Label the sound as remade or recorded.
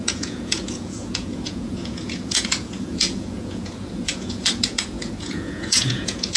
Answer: remade